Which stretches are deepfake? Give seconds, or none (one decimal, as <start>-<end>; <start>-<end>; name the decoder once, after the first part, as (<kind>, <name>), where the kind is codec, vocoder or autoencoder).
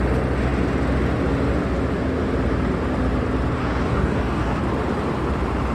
3.6-4.6 (codec, DAC)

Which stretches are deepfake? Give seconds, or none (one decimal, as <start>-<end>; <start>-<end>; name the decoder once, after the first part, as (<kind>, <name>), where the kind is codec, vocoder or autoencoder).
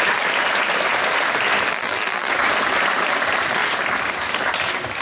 1.7-2.3 (vocoder, BigVGAN v2)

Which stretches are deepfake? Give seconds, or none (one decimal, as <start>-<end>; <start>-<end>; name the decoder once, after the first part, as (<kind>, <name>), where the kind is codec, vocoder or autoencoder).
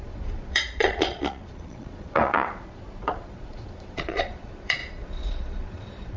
0.0-6.2 (vocoder, Vocos)